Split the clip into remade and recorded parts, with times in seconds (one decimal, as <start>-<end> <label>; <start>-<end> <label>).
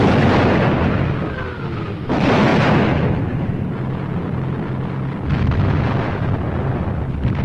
0.0-7.4 recorded